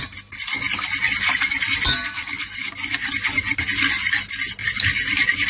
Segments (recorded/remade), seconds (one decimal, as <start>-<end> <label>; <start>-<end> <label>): 0.0-5.5 recorded